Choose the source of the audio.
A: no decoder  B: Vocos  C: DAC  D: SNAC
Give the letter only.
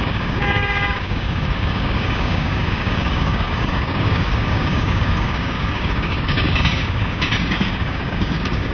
C